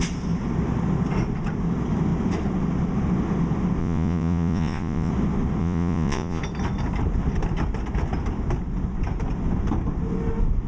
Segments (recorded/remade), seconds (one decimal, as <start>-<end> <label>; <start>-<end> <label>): 0.0-3.8 recorded; 3.8-5.1 remade; 5.1-5.6 recorded; 5.6-6.4 remade; 6.4-10.7 recorded